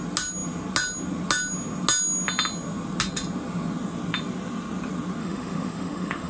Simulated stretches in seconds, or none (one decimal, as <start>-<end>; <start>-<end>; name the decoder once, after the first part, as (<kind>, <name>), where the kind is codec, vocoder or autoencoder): 5.2-6.3 (autoencoder, DAC-VAE)